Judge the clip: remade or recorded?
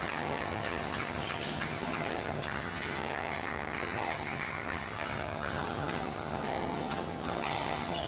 remade